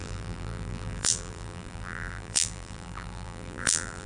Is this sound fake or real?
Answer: fake